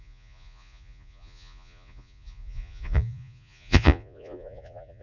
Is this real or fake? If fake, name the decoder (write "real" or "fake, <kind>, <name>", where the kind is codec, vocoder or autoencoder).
fake, vocoder, Vocos